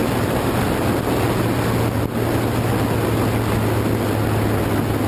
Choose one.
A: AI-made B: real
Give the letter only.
B